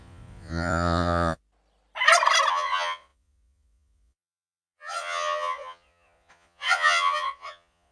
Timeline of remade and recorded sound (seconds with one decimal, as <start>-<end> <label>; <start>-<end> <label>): 0.0-1.4 remade; 1.4-2.5 recorded; 2.5-7.9 remade